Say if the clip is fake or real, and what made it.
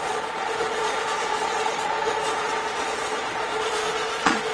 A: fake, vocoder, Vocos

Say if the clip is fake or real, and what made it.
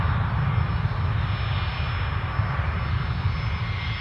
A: real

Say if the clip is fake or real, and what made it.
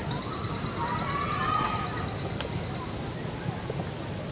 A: real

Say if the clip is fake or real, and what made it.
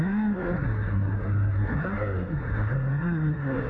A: fake, codec, SNAC